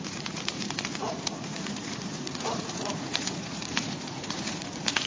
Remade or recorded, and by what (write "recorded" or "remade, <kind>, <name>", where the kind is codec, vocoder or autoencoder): remade, vocoder, Vocos